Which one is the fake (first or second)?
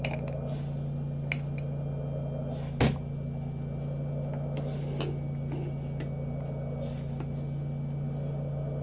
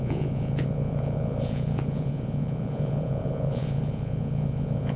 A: second